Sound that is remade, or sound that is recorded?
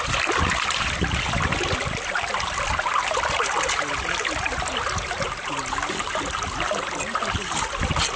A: recorded